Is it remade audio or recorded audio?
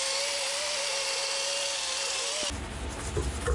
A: recorded